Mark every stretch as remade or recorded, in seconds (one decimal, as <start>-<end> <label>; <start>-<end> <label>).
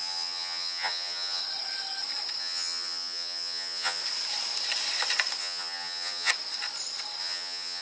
0.0-1.4 remade; 1.4-2.4 recorded; 2.4-4.0 remade; 4.0-5.4 recorded; 5.4-6.3 remade; 6.3-7.2 recorded; 7.2-7.8 remade